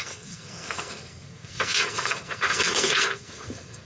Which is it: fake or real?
fake